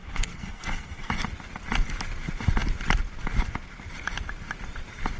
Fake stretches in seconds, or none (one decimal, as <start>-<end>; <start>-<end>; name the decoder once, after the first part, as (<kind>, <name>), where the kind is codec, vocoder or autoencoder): 0.0-1.1 (codec, SNAC)